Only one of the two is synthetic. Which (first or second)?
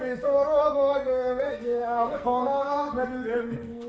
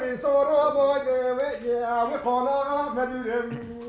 first